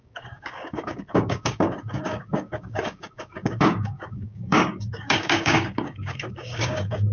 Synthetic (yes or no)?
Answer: yes